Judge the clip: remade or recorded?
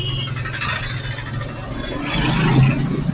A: recorded